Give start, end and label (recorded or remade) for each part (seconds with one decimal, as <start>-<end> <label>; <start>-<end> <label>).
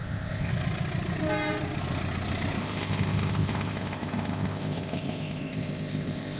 0.0-0.5 remade; 0.5-2.6 recorded; 2.6-6.4 remade